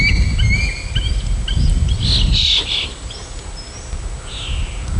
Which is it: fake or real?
real